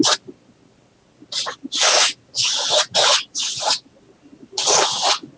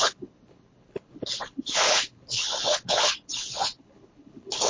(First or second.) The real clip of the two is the first